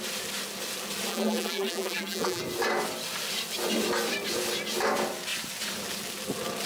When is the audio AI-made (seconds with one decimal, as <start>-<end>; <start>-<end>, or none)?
1.1-2.4